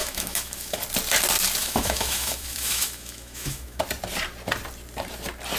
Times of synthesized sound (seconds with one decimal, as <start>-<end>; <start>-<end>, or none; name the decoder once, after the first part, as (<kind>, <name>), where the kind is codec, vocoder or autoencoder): 0.0-0.8 (autoencoder, DAC-VAE); 1.6-3.8